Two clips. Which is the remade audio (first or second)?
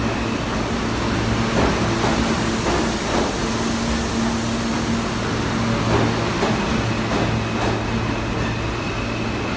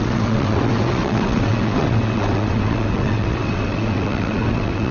second